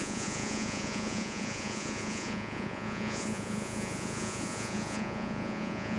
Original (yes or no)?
no